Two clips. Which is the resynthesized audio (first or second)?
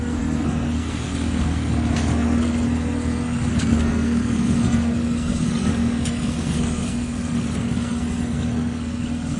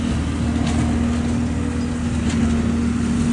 first